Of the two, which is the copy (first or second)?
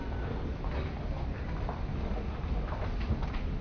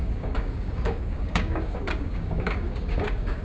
second